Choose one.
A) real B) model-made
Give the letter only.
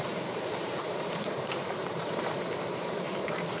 B